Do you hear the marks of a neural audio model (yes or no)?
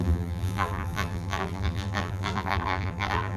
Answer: yes